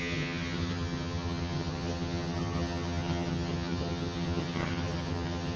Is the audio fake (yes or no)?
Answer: yes